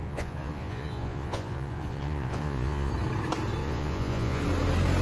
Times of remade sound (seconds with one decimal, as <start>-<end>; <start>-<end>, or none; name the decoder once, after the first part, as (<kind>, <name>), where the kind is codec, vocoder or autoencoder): 0.0-2.9 (vocoder, Vocos); 3.6-4.4

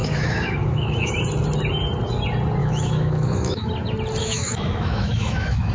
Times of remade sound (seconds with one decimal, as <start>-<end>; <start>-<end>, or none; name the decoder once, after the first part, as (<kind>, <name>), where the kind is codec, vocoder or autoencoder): 0.0-1.1 (autoencoder, DAC-VAE); 2.6-3.7; 4.2-5.7

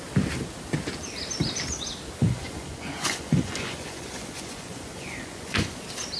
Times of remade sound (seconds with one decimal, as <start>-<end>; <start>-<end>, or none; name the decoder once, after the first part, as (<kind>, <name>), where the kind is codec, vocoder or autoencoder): 2.2-5.8 (vocoder, Vocos)

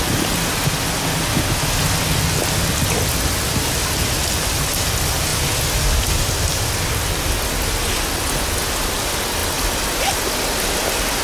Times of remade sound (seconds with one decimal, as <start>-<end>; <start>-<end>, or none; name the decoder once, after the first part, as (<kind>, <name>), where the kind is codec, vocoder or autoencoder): none